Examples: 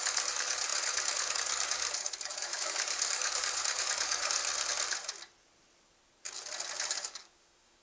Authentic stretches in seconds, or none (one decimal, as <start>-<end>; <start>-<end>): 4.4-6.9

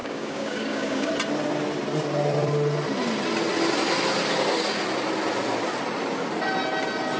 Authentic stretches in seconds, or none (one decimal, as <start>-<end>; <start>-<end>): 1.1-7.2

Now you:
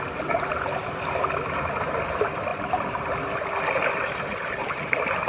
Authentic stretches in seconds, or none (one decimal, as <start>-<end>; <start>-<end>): 0.0-5.3